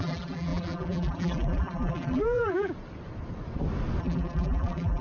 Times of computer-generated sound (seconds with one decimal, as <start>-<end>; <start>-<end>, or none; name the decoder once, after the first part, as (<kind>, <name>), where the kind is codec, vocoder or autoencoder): 0.0-2.7 (vocoder, BigVGAN v2); 4.0-5.0